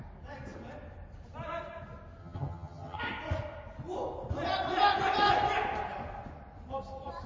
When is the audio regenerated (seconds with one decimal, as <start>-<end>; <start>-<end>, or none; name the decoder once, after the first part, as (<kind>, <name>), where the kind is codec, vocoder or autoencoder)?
2.2-3.0 (vocoder, HiFi-GAN)